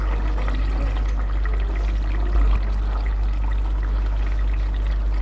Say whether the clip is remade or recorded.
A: recorded